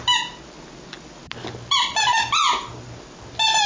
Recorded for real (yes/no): yes